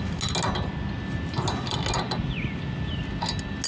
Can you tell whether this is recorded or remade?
recorded